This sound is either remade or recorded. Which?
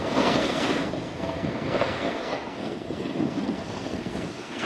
remade